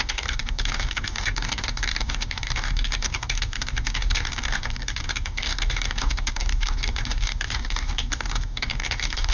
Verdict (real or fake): fake